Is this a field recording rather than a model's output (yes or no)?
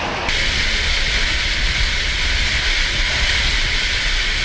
yes